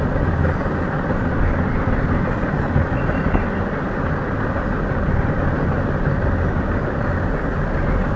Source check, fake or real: real